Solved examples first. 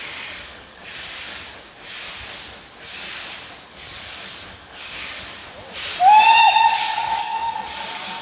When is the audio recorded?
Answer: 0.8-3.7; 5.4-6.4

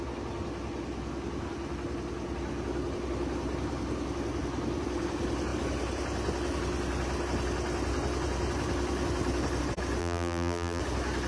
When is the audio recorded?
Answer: 0.0-10.0; 10.8-11.3

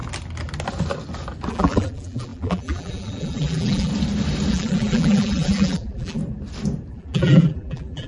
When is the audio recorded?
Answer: 0.0-1.5; 3.9-4.5; 6.2-6.9

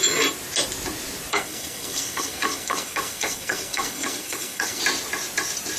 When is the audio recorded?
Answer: 0.0-1.3; 4.8-5.8

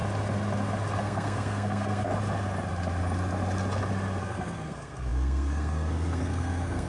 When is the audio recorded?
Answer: 0.0-1.0; 2.1-4.2

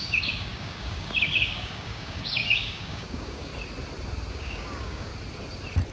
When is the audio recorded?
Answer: 3.5-4.3; 5.1-5.9

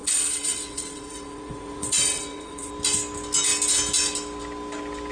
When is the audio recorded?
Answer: 2.7-5.1